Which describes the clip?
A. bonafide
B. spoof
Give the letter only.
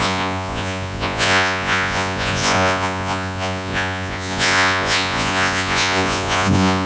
B